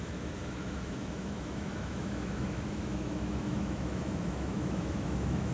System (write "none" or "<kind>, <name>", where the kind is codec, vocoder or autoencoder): autoencoder, DAC-VAE